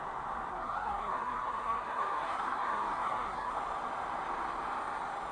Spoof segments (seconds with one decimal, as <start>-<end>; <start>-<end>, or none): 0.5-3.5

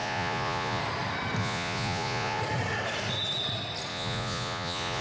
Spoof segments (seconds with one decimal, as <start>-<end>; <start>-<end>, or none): 0.0-0.8; 1.4-2.4; 3.9-5.0

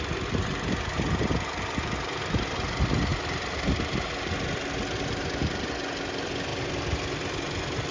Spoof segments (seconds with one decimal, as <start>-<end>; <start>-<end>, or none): none